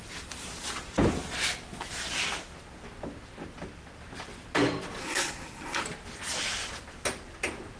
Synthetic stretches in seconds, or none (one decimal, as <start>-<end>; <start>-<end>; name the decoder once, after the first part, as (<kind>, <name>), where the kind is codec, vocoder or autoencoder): 5.0-5.8 (codec, SNAC)